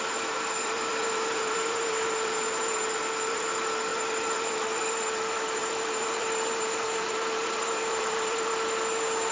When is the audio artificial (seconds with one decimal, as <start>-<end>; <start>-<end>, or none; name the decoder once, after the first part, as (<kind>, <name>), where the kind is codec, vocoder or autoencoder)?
0.0-8.5 (vocoder, BigVGAN v2)